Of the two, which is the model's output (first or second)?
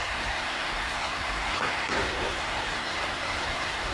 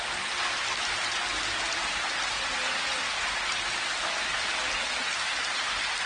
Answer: first